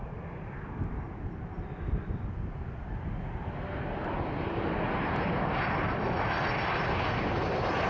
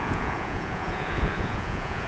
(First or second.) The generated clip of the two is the second